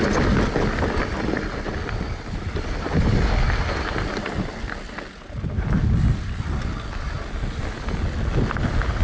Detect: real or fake real